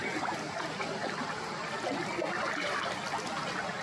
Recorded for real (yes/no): yes